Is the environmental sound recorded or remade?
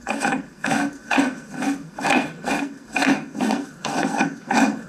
remade